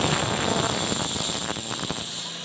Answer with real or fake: real